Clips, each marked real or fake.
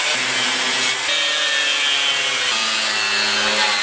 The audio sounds real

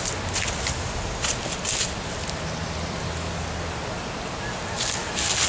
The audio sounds real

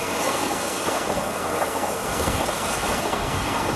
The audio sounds fake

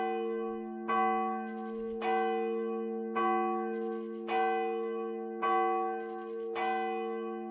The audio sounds real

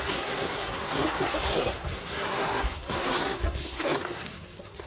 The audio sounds fake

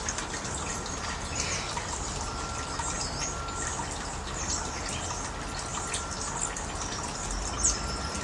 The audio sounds real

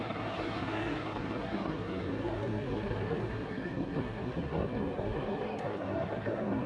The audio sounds fake